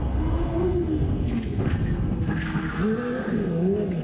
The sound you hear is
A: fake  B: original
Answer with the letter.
A